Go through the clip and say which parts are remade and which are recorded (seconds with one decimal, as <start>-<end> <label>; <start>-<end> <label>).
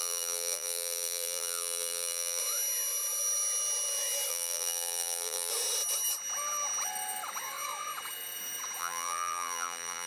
0.0-2.4 remade; 2.4-4.3 recorded; 4.3-5.5 remade; 5.5-8.8 recorded; 8.8-10.1 remade